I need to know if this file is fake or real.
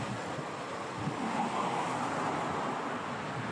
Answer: real